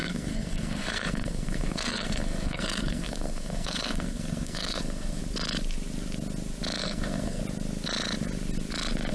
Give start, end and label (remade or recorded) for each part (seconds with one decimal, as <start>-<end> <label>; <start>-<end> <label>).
0.0-5.2 remade; 5.2-6.8 recorded; 6.8-7.4 remade; 7.4-9.1 recorded